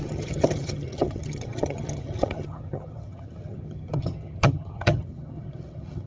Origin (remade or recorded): remade